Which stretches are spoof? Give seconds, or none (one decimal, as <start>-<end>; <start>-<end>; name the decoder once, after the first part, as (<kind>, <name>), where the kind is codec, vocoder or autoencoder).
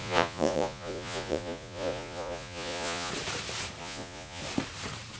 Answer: 0.0-3.1 (vocoder, Vocos); 3.8-4.4